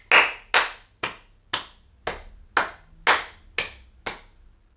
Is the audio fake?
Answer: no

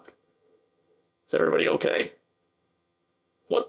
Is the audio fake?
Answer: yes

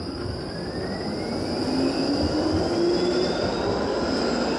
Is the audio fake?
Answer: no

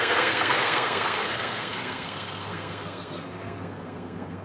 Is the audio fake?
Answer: yes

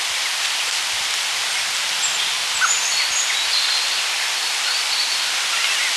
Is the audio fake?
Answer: no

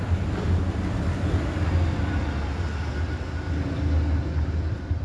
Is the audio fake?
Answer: no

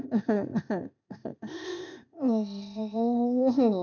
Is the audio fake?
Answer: yes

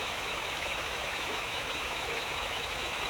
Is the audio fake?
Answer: yes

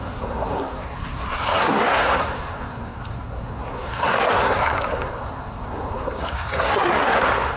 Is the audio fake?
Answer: yes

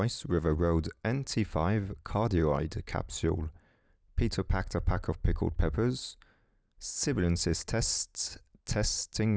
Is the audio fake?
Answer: no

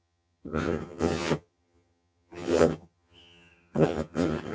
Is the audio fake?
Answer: yes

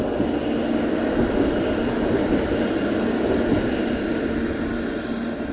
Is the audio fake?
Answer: no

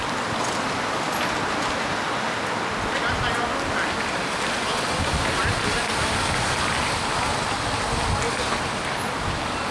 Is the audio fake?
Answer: no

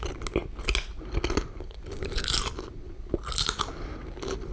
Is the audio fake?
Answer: no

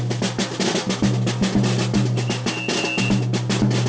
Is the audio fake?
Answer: no